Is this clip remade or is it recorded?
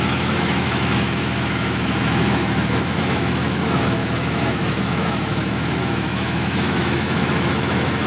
remade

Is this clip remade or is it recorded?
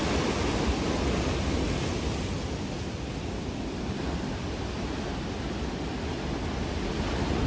recorded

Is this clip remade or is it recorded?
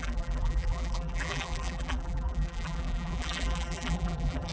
remade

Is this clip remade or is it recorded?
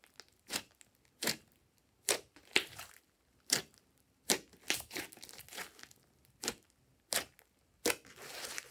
recorded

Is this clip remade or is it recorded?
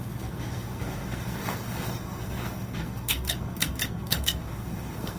remade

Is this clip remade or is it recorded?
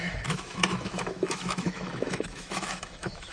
remade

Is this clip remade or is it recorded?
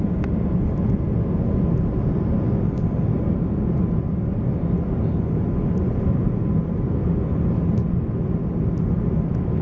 recorded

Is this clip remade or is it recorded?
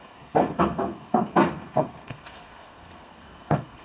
remade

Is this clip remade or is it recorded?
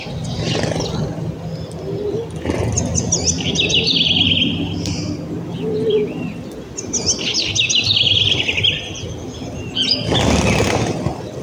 recorded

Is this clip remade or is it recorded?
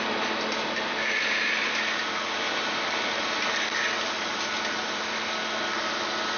recorded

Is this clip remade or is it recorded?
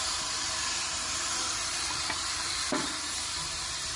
remade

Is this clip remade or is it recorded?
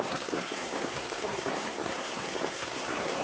remade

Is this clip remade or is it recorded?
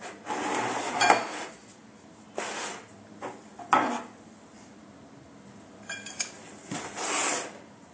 recorded